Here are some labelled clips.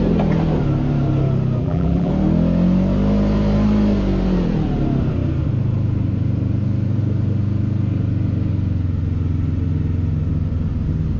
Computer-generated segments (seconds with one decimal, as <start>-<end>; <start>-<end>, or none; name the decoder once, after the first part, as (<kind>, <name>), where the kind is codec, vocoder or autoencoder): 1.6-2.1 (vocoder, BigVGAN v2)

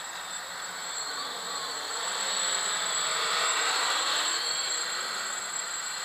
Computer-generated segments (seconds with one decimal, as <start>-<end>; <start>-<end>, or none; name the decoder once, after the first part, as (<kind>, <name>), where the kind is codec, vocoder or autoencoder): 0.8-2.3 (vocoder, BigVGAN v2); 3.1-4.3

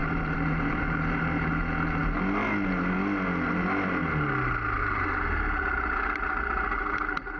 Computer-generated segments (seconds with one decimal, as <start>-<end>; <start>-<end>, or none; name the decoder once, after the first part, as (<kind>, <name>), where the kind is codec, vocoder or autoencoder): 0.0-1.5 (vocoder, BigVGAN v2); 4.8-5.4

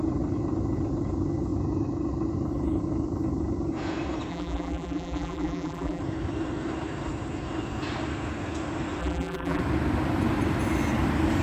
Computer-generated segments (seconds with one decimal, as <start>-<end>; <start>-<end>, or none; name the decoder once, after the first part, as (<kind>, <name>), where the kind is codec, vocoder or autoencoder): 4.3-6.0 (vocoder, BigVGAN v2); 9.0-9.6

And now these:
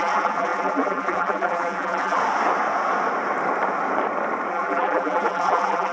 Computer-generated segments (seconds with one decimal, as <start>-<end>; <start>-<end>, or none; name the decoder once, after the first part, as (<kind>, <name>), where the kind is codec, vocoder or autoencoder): 0.0-2.2 (vocoder, BigVGAN v2); 4.5-5.9

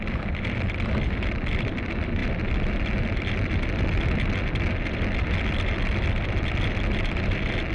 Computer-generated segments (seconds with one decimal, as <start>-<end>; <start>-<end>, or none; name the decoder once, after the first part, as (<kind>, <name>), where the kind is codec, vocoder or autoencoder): none

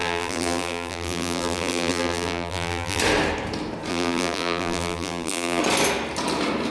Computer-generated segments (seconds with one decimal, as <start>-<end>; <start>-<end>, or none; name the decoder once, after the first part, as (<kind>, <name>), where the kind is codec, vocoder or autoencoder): 0.0-3.0 (vocoder, BigVGAN v2); 3.9-5.6